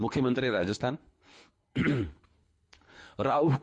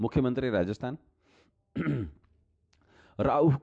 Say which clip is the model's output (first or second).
first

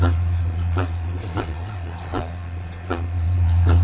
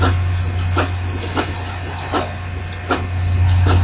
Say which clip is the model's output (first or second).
first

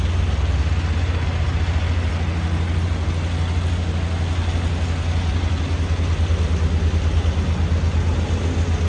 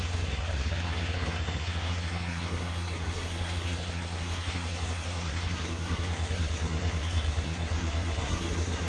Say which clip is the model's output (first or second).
second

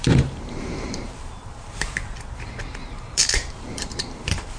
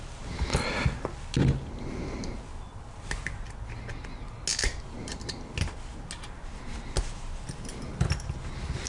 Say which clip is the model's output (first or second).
first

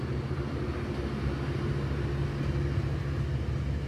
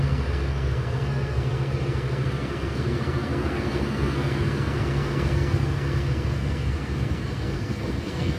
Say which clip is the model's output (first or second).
second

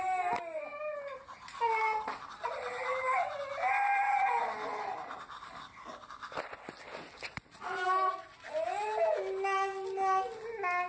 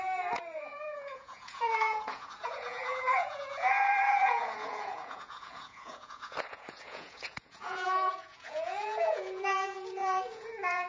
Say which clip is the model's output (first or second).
second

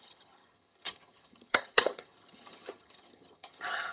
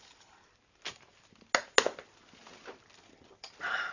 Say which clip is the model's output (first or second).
first